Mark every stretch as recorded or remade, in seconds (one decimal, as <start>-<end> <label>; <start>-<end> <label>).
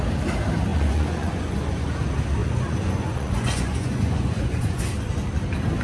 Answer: 0.0-0.7 recorded; 0.7-2.0 remade; 2.0-2.4 recorded; 2.4-4.8 remade; 4.8-5.8 recorded